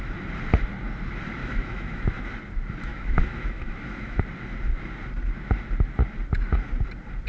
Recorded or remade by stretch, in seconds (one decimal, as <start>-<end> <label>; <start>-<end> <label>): 0.0-1.4 recorded; 1.4-2.2 remade; 2.2-2.9 recorded; 2.9-4.2 remade; 4.2-7.3 recorded